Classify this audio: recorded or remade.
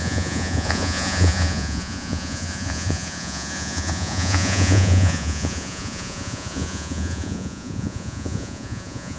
remade